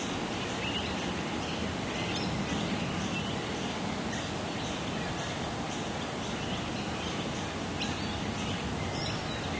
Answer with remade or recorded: recorded